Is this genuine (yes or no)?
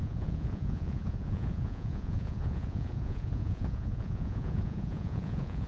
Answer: no